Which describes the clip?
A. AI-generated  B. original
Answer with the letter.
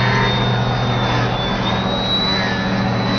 B